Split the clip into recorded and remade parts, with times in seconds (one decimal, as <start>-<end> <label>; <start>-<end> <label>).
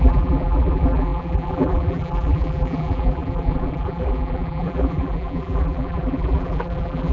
0.0-7.1 remade